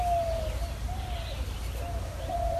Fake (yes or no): no